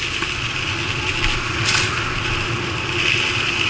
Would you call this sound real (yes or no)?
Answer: yes